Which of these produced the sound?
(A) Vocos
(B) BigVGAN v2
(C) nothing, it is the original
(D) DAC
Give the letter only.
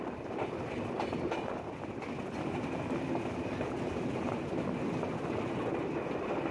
C